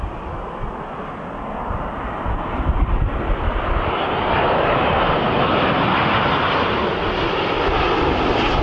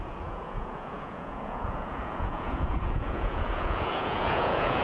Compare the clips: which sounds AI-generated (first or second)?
second